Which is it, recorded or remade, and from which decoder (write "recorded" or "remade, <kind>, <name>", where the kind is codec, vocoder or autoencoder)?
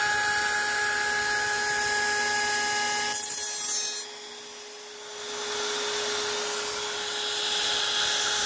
recorded